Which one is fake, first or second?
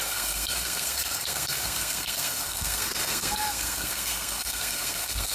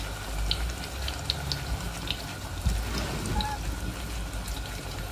first